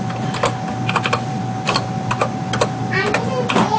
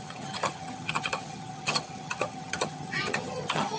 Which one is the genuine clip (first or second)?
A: first